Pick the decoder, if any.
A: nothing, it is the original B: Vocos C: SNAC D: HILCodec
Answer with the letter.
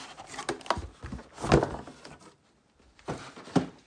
A